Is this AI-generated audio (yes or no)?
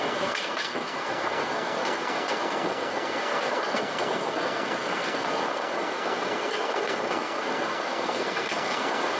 yes